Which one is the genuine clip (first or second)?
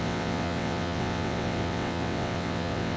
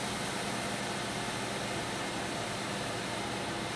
second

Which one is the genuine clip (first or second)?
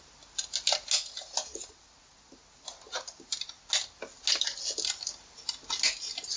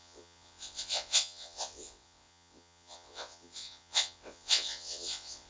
first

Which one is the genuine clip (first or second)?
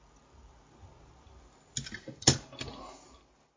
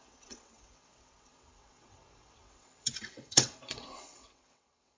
first